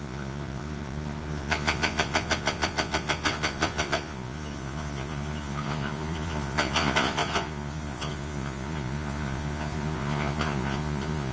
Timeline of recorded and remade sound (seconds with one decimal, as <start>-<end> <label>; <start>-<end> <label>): 0.0-11.3 remade